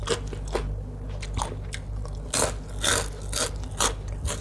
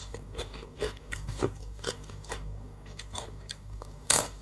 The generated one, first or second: second